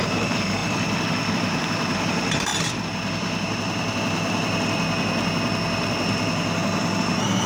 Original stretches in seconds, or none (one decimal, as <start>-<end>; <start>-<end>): 0.6-1.3; 2.5-7.0